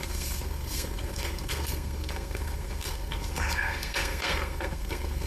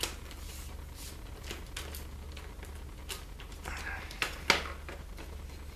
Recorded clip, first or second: second